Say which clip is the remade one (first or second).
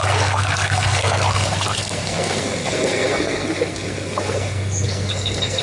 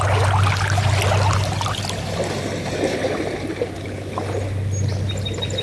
first